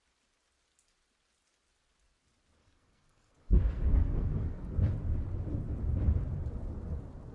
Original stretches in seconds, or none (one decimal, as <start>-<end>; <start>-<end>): 0.0-2.6; 4.8-7.3